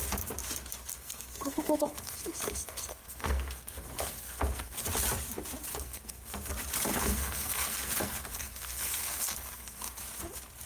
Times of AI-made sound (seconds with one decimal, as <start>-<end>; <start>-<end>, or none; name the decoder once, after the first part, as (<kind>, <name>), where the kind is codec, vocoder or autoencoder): 0.9-4.8 (codec, SNAC); 5.7-6.5; 6.9-10.0